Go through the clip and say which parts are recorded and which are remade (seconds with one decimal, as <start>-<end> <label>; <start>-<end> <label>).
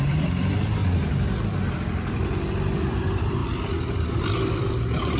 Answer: 0.0-0.8 remade; 0.8-2.7 recorded; 2.7-3.4 remade; 3.4-4.1 recorded; 4.1-5.2 remade